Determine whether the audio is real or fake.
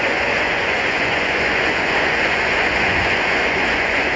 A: fake